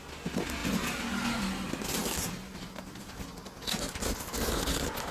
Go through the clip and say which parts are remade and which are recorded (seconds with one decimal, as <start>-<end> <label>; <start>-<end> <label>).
0.0-5.1 recorded